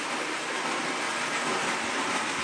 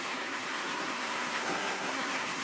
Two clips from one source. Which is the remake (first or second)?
second